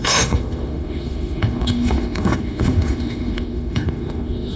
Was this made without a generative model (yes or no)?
no